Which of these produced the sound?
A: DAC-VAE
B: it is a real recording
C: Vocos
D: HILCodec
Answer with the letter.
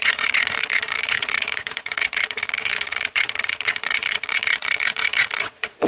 C